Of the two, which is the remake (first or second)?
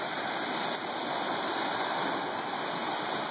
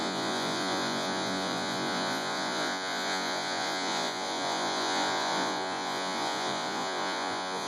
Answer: second